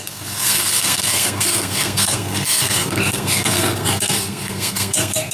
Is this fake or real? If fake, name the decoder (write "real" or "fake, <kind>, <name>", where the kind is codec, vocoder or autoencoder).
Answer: fake, codec, SNAC